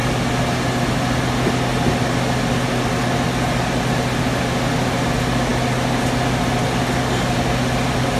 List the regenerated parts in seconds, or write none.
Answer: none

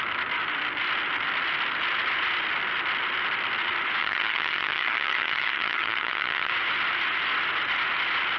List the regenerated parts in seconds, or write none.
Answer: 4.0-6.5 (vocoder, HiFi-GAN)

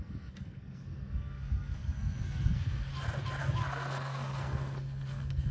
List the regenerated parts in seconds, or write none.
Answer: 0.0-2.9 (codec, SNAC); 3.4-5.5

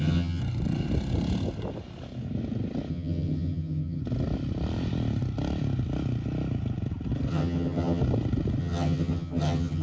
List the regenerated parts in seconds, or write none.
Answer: 0.0-0.4 (vocoder, HiFi-GAN); 2.9-4.0; 7.3-8.0; 8.6-9.8